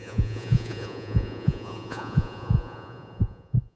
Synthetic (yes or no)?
yes